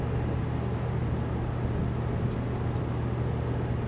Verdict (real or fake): real